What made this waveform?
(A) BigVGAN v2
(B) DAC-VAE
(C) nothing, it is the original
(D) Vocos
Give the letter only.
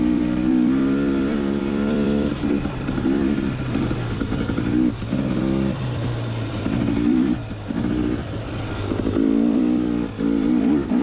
A